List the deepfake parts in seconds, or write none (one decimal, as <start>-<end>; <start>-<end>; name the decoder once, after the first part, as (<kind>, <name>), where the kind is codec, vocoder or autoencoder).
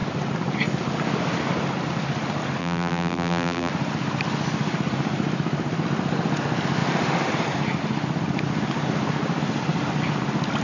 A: 2.6-3.7 (vocoder, BigVGAN v2)